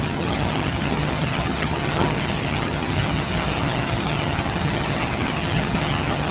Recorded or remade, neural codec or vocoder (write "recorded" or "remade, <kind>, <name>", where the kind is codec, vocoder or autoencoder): remade, vocoder, HiFi-GAN